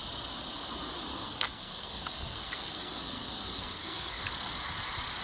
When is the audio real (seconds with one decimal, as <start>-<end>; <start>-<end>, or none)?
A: 0.0-1.1; 4.2-5.2